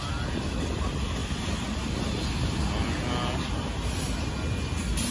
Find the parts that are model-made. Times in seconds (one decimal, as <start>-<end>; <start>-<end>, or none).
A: none